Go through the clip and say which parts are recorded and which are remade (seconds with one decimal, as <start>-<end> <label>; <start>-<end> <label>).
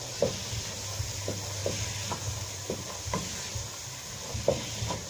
0.0-5.1 recorded